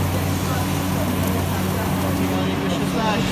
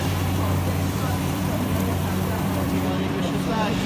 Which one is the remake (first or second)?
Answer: second